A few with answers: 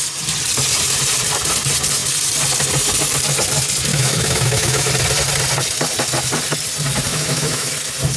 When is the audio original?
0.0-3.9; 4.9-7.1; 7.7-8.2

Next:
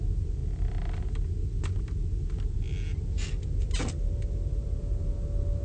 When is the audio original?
0.0-5.6